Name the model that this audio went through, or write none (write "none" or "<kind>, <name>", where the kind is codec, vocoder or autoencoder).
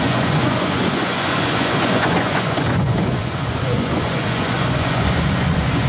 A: vocoder, Vocos